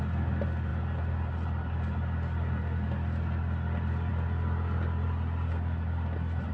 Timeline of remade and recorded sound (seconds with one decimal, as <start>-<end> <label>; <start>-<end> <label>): 0.0-6.5 recorded